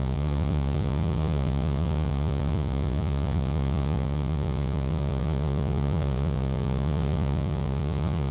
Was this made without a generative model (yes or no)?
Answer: no